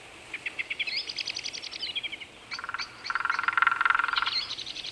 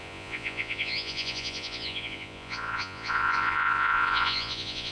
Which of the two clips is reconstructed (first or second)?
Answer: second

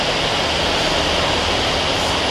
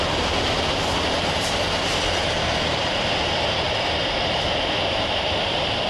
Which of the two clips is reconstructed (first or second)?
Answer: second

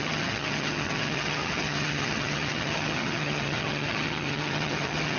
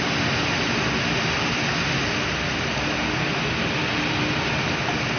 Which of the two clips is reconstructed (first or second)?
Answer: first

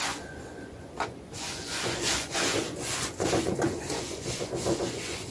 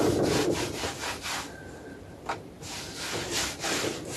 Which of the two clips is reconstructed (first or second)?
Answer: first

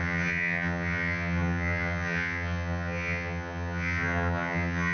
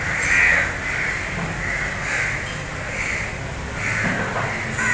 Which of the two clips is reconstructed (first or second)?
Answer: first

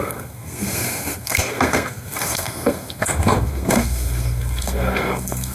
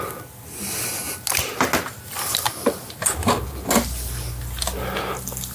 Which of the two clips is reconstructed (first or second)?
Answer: first